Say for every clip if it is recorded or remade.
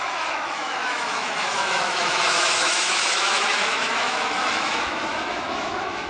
remade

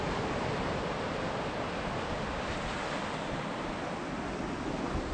recorded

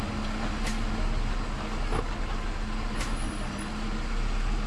recorded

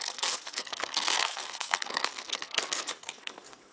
remade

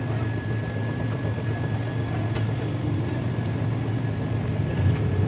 recorded